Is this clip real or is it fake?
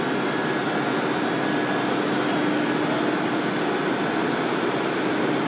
real